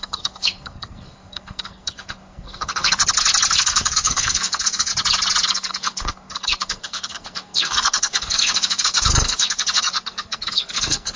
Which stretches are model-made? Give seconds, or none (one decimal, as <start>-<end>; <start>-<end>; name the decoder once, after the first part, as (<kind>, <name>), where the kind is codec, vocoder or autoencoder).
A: 0.0-3.0 (codec, SNAC); 3.5-4.9; 5.5-11.2